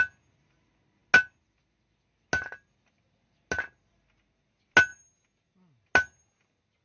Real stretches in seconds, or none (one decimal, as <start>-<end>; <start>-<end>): 0.0-6.8